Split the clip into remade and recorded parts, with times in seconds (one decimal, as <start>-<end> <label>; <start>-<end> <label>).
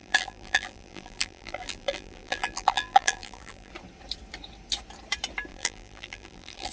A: 0.0-3.7 remade; 3.7-5.5 recorded; 5.5-6.7 remade